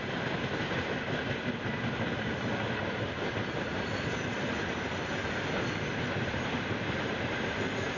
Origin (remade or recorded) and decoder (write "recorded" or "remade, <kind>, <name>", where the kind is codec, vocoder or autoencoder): recorded